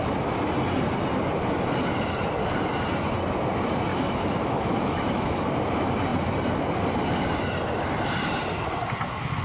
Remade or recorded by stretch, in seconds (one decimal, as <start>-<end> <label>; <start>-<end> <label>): 0.0-3.9 recorded; 3.9-5.4 remade; 5.4-9.4 recorded